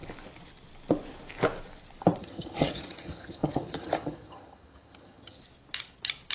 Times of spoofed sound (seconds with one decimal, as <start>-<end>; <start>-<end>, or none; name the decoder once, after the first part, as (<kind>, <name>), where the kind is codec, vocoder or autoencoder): 2.2-5.4 (vocoder, HiFi-GAN)